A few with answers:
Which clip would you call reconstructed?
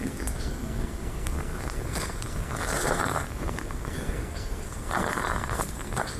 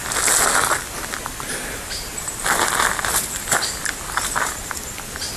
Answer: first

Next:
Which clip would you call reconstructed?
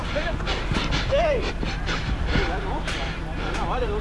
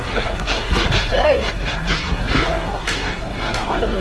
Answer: second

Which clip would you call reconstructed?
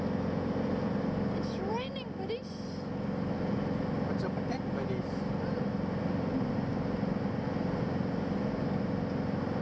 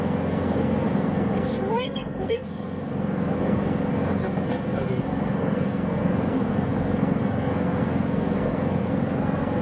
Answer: second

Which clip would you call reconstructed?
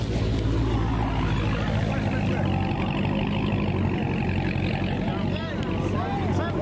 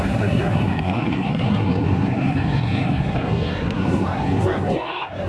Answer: second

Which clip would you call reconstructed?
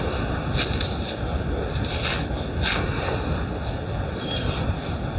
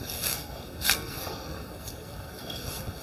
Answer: second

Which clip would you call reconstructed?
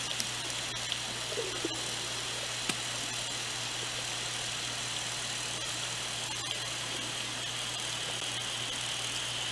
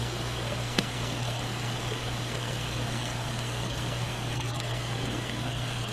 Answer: second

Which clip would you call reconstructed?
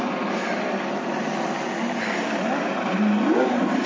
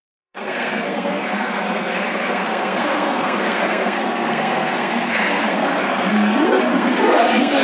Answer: second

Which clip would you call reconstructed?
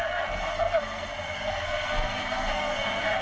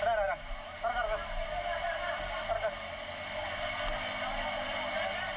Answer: first